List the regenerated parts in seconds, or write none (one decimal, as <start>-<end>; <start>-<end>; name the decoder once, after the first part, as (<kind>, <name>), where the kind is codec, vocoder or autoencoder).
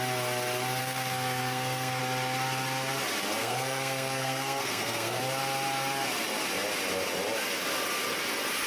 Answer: 0.8-2.0 (codec, SNAC); 3.4-5.2